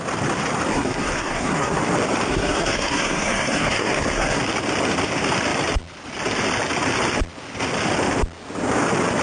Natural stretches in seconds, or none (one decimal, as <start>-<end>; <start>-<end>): 0.0-0.7; 1.8-2.3; 4.4-9.2